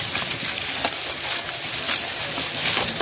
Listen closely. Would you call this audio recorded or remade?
remade